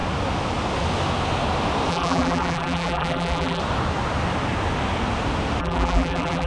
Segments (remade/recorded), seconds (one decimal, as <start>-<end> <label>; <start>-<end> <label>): 0.0-1.9 recorded; 1.9-3.6 remade; 3.6-5.6 recorded; 5.6-6.5 remade

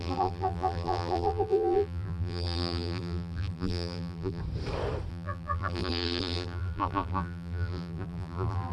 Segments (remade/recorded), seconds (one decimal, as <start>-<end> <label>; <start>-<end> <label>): 0.0-4.4 remade; 4.4-5.1 recorded; 5.1-8.7 remade

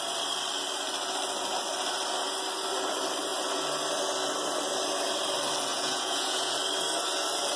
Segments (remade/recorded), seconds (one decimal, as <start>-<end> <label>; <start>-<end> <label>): 0.0-5.7 recorded; 5.7-6.5 remade; 6.5-7.6 recorded

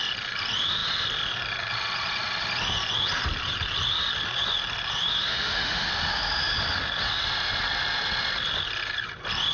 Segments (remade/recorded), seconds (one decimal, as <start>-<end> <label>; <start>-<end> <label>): 0.0-5.3 recorded; 5.3-5.9 remade; 5.9-9.5 recorded